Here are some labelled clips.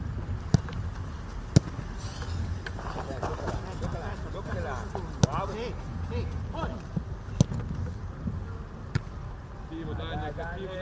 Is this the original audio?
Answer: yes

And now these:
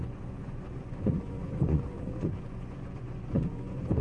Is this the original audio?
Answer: no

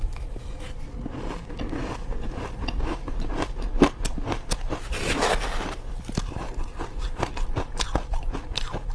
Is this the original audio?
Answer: yes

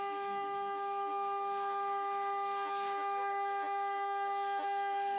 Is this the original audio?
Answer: no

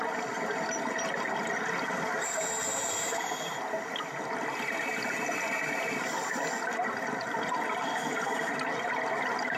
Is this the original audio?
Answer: yes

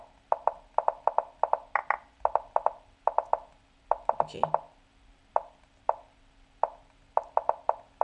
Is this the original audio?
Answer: yes